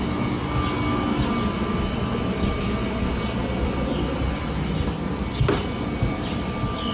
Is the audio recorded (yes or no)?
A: yes